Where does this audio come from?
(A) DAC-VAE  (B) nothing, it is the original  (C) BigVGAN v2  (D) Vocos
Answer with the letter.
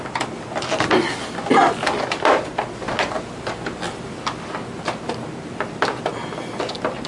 B